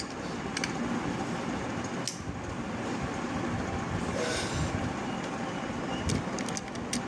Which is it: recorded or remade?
recorded